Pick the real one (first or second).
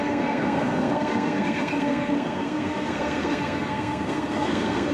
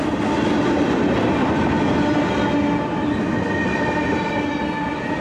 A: second